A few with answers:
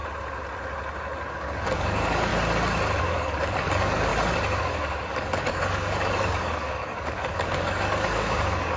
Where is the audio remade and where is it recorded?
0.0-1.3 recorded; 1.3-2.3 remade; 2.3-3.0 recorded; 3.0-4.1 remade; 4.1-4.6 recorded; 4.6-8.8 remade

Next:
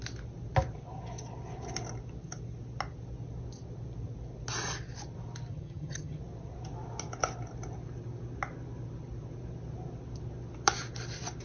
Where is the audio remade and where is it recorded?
0.0-5.5 recorded; 5.5-6.2 remade; 6.2-11.4 recorded